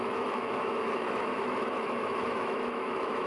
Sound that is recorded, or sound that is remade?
remade